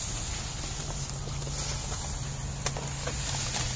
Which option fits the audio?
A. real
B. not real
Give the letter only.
A